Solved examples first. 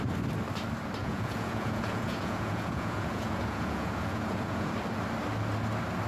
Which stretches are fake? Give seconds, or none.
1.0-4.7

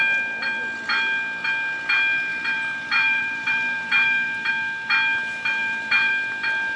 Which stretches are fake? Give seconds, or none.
2.3-4.5; 5.6-6.1

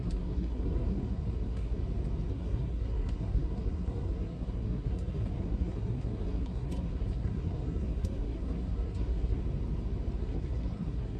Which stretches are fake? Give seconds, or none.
0.0-1.8; 2.3-9.4; 10.2-11.2

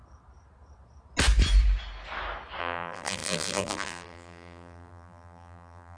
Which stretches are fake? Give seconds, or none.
2.6-6.0

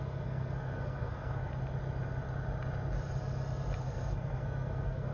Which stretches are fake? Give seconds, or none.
0.0-1.5; 3.8-5.1

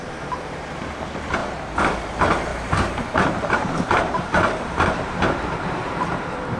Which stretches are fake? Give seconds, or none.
0.0-1.4; 2.0-6.6

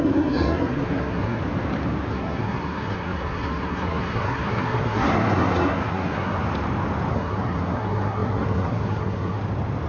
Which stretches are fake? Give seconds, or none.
0.0-1.4; 2.1-6.4; 7.1-9.4